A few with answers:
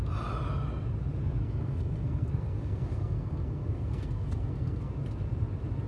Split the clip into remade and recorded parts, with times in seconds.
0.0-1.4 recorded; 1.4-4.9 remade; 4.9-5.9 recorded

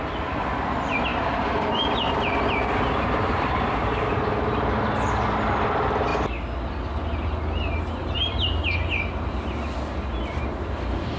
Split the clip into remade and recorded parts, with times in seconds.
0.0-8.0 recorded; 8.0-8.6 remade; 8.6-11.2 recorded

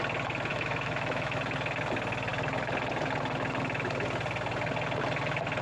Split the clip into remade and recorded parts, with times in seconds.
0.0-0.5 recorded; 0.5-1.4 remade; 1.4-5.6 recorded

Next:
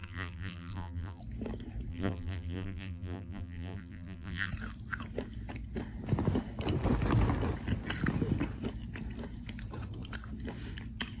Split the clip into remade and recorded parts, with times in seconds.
0.0-1.2 remade; 1.2-1.9 recorded; 1.9-4.5 remade; 4.5-11.2 recorded

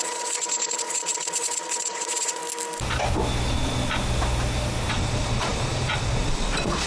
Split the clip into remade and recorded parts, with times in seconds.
0.0-2.4 remade; 2.4-4.9 recorded; 4.9-6.9 remade